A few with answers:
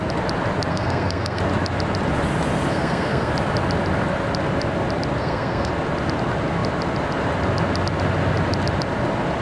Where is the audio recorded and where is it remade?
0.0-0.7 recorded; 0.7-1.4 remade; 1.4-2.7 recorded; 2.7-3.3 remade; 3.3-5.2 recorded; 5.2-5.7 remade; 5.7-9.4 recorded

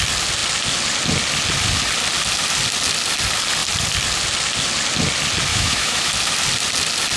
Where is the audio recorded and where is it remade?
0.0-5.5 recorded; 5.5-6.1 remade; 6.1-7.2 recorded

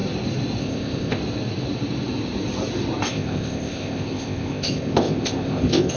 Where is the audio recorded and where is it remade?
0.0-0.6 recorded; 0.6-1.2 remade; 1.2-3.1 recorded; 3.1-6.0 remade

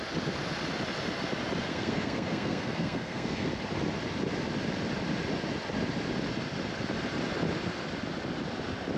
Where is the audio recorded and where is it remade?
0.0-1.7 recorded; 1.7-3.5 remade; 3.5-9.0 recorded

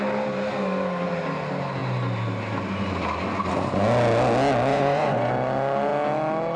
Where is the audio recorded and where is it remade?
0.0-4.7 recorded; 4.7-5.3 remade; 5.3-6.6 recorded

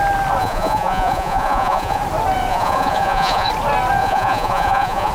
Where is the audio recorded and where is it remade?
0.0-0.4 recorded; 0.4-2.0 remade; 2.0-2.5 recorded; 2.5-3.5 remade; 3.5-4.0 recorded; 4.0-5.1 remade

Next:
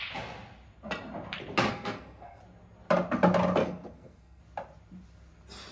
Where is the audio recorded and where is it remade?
0.0-1.7 recorded; 1.7-2.4 remade; 2.4-3.6 recorded; 3.6-4.4 remade; 4.4-5.7 recorded